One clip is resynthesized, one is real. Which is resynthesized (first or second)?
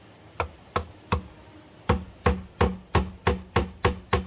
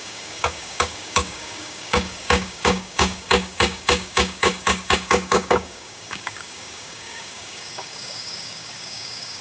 second